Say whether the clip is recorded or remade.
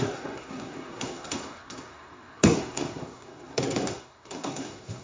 remade